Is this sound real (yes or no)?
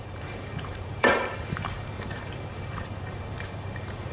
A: no